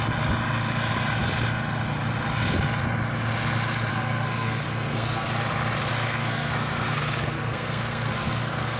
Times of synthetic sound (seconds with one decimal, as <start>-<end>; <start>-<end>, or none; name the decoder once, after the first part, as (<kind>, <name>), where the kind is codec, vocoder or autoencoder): 3.9-5.3 (codec, SNAC); 5.9-8.8